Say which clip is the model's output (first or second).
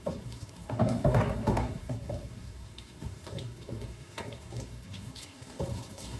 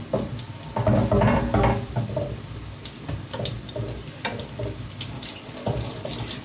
first